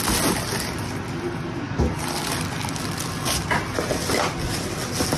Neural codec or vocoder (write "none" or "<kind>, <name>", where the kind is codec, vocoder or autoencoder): none